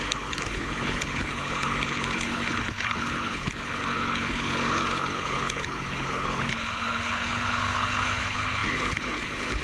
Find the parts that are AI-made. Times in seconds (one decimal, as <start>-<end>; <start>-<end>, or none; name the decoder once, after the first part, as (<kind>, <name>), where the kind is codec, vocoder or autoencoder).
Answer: 0.0-9.6 (codec, HILCodec)